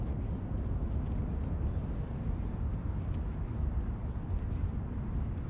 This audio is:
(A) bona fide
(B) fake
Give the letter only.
A